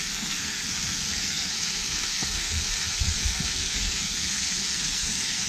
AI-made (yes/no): yes